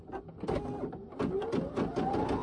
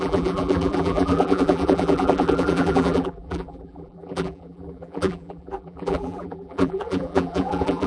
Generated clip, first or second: second